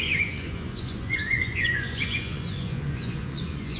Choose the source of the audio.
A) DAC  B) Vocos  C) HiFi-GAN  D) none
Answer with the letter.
B